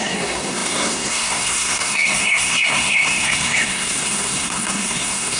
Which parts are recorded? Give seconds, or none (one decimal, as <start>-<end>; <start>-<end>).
none